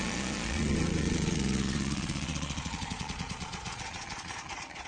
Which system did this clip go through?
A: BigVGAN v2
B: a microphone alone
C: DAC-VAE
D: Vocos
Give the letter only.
D